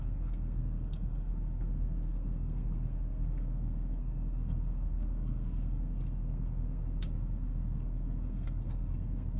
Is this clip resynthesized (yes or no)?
yes